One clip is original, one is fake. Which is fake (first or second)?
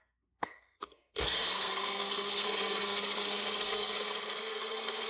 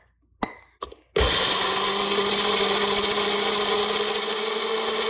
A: first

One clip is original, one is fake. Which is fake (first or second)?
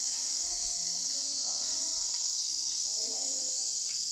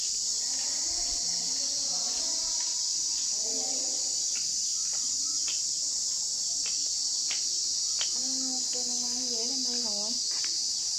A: first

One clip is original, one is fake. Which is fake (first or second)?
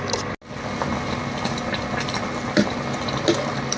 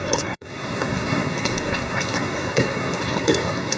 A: second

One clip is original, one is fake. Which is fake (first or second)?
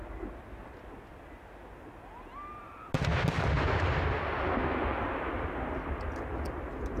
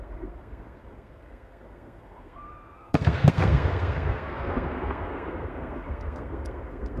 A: second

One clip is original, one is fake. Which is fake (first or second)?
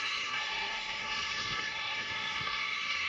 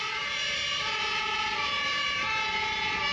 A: first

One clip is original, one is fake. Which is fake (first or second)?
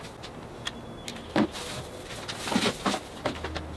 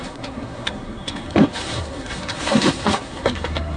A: second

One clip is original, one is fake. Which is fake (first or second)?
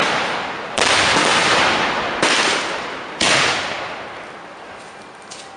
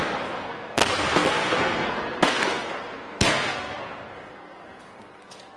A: second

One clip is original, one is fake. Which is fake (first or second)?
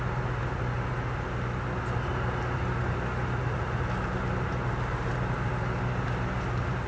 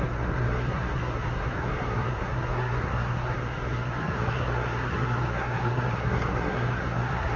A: second